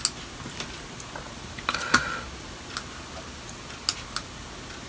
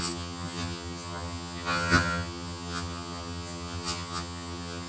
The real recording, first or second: first